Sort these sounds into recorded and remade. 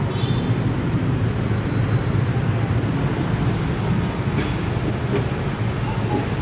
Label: recorded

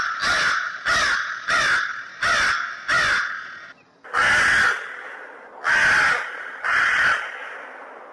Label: recorded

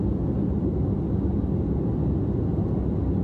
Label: recorded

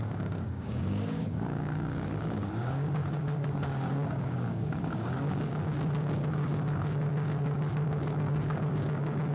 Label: remade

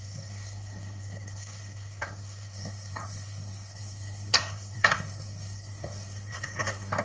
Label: remade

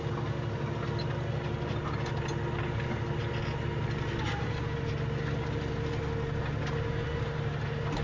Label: recorded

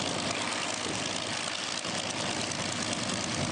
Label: recorded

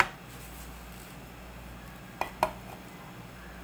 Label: recorded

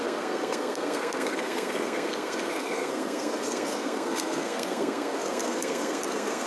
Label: remade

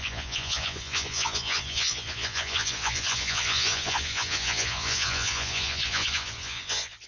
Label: remade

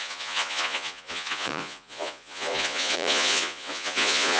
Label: remade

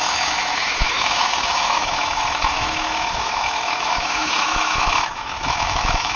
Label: remade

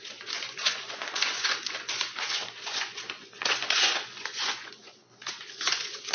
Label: remade